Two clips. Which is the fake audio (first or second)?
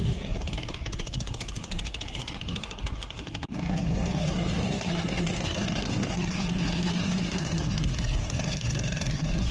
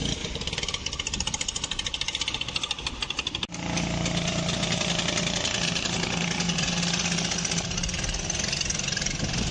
first